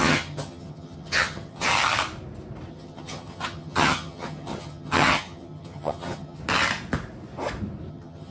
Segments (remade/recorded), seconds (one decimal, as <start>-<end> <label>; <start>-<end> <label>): 0.0-1.7 remade; 1.7-2.7 recorded; 2.7-6.4 remade; 6.4-7.9 recorded; 7.9-8.3 remade